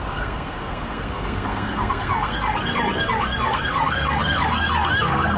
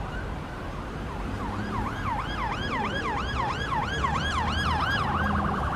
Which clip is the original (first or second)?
second